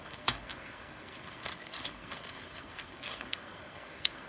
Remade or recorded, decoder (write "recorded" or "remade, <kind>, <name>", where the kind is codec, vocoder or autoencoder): remade, codec, SNAC